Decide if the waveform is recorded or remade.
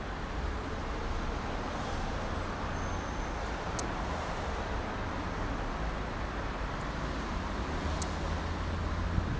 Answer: recorded